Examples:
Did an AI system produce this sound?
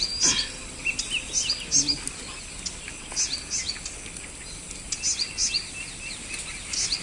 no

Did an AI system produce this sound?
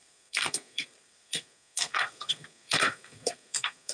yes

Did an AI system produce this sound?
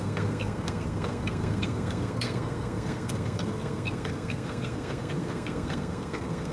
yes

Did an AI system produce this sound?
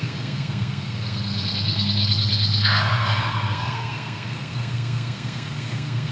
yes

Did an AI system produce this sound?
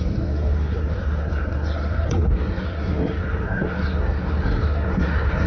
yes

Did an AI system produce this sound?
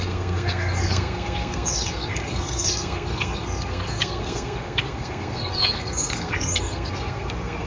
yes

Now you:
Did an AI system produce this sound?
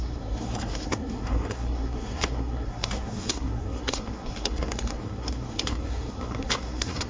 yes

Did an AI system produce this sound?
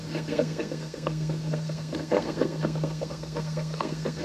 yes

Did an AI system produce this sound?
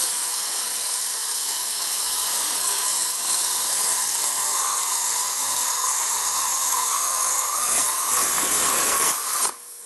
yes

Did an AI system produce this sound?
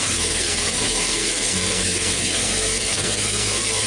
yes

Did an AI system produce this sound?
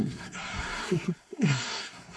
yes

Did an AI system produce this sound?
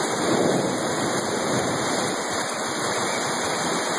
no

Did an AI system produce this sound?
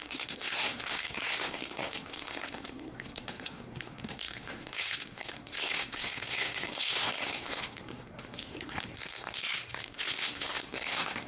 yes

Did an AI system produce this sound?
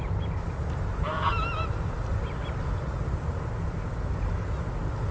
no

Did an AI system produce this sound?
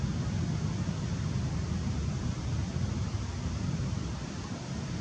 no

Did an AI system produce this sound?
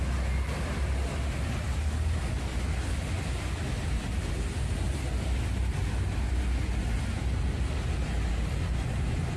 no